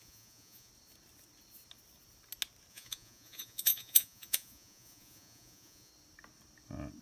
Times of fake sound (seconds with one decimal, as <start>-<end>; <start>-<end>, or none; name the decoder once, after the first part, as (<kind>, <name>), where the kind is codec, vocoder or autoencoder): 0.0-0.7 (vocoder, Vocos); 2.7-5.9